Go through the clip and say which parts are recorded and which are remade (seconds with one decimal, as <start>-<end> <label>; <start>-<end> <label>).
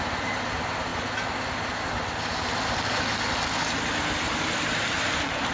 0.0-0.9 remade; 0.9-4.2 recorded; 4.2-5.5 remade